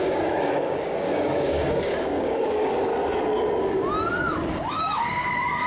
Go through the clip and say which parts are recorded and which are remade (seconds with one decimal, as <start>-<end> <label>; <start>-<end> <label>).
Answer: 0.0-2.9 remade; 2.9-4.7 recorded; 4.7-5.7 remade